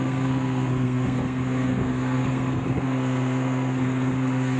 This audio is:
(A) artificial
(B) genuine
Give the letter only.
A